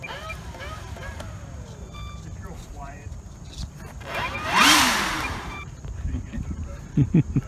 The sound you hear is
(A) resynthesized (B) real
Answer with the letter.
A